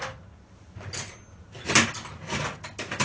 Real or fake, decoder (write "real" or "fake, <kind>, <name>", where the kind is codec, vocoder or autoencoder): real